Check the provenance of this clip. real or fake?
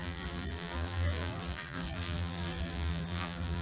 fake